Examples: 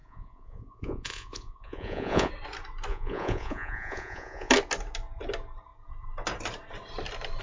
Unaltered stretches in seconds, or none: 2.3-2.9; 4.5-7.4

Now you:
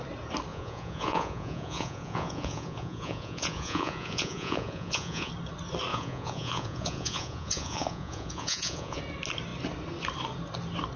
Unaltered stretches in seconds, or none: 0.0-0.5; 5.3-5.9; 9.0-11.0

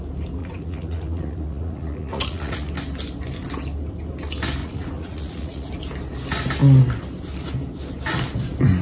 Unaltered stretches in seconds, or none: 0.0-0.4; 2.7-4.6; 5.7-8.8

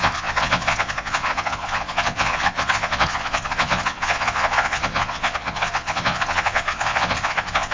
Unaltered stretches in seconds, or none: none

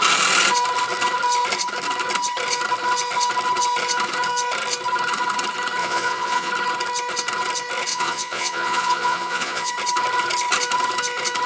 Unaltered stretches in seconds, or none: 0.0-5.8; 6.5-7.9; 9.7-11.5

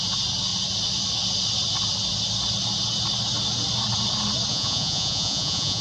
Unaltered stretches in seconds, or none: 0.0-4.5

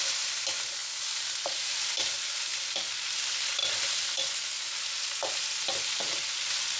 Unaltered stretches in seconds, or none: 0.0-6.8